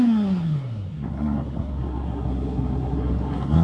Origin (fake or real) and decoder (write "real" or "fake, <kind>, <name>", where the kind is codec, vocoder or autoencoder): fake, codec, SNAC